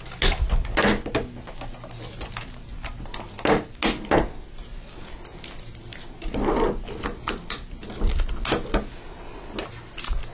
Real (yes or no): yes